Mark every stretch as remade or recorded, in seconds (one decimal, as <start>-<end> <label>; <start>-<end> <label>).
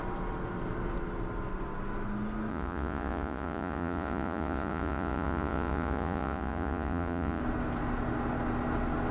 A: 0.0-2.5 recorded; 2.5-7.4 remade; 7.4-9.1 recorded